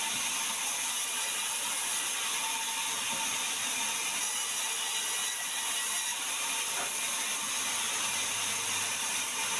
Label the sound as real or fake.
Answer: real